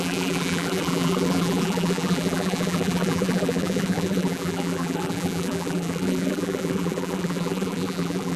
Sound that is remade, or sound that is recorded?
remade